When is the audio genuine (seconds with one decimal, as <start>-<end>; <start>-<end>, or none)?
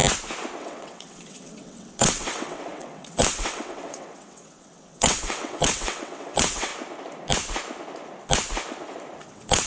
0.0-0.6; 6.7-9.2